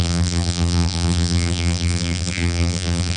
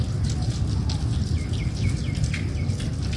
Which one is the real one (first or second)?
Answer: second